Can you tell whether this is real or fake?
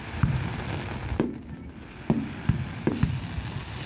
real